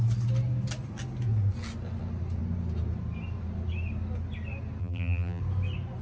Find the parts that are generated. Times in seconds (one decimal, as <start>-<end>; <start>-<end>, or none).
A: 4.8-5.4